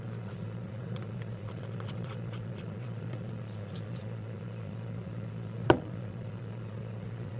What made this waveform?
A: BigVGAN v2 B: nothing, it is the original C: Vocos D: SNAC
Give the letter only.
C